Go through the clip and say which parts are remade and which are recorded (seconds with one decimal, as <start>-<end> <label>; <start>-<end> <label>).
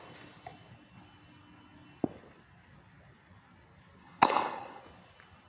0.0-4.0 recorded; 4.0-4.8 remade; 4.8-5.5 recorded